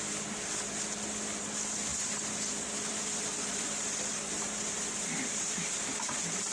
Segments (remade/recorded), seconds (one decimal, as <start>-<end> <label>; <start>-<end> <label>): 0.0-1.9 recorded; 1.9-5.7 remade; 5.7-6.5 recorded